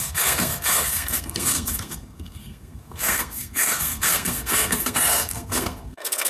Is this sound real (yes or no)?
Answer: no